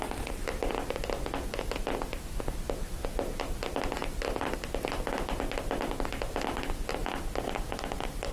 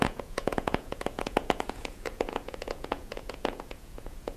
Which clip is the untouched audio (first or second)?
first